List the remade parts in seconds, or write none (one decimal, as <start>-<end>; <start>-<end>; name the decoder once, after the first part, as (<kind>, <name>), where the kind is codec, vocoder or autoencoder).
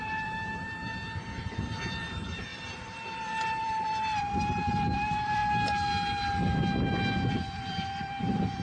0.0-0.9 (vocoder, BigVGAN v2); 1.6-5.4; 7.3-8.6